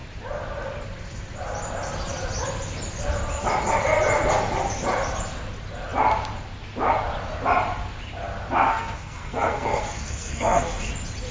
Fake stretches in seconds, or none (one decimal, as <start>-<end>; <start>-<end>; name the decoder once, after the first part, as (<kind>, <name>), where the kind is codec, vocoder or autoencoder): 8.7-10.9 (codec, SNAC)